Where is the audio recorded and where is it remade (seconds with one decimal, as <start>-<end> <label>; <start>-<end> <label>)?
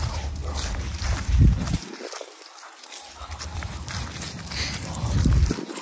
0.0-5.8 recorded